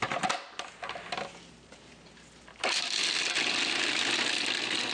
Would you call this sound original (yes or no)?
yes